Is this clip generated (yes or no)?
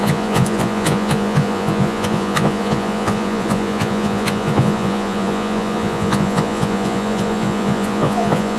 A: yes